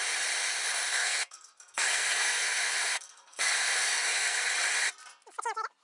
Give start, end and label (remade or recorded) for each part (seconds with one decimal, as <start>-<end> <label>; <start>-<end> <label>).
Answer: 0.0-1.0 recorded; 1.0-4.5 remade; 4.5-5.8 recorded